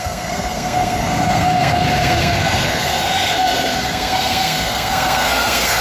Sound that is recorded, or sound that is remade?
remade